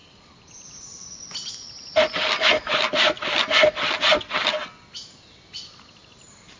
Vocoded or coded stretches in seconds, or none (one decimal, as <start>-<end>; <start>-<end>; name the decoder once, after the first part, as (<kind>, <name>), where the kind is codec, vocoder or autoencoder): none